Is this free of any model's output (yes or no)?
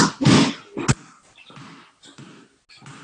yes